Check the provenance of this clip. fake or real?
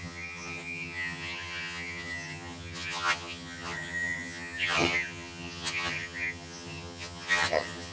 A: fake